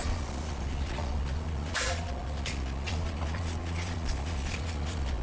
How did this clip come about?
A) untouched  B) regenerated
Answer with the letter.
B